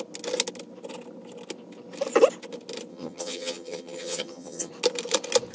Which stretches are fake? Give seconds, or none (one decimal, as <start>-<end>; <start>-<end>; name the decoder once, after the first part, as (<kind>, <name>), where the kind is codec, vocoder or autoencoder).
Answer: 2.9-4.7 (vocoder, HiFi-GAN)